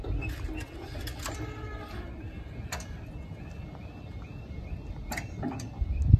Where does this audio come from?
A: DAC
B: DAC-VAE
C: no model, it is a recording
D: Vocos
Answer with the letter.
C